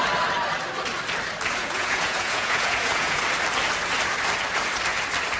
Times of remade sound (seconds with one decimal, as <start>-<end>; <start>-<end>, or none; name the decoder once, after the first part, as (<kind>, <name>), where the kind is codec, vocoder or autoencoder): 1.6-3.2 (vocoder, Vocos)